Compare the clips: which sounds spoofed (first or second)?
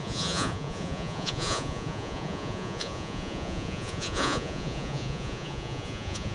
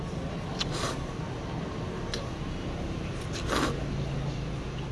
first